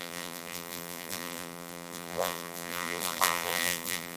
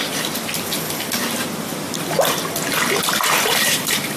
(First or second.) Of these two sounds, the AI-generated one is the first